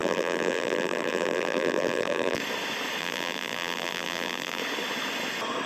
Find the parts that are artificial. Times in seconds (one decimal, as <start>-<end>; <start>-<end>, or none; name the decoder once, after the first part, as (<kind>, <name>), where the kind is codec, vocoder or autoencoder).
0.0-2.4 (vocoder, BigVGAN v2); 3.0-4.6